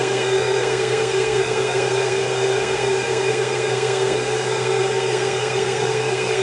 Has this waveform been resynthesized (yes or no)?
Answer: yes